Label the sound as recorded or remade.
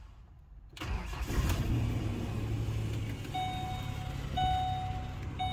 recorded